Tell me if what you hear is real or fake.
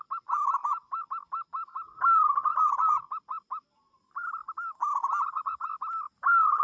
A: real